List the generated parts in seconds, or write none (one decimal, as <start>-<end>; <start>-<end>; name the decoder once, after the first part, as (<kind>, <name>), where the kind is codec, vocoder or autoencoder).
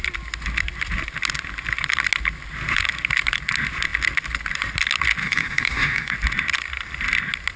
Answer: 5.2-6.1 (autoencoder, DAC-VAE)